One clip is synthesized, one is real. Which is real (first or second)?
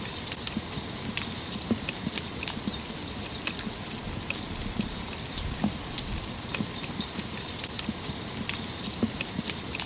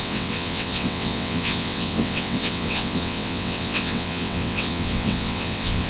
first